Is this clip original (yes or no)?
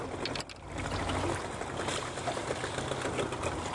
yes